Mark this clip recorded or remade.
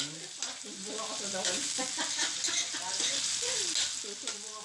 recorded